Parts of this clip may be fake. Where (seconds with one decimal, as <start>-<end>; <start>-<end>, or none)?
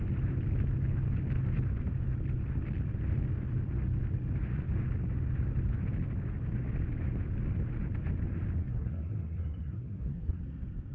8.6-10.4